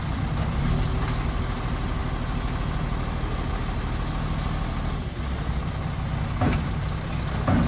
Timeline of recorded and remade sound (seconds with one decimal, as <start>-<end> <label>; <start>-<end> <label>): 0.0-7.7 recorded